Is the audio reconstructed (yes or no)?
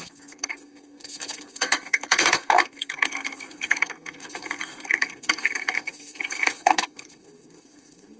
yes